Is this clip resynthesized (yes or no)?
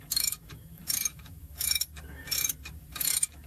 yes